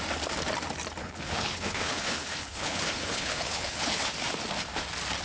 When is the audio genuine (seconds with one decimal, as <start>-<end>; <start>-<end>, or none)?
0.0-1.0; 4.1-5.2